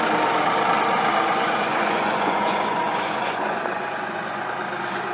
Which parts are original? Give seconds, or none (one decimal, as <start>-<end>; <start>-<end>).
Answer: 0.0-1.3; 4.4-5.1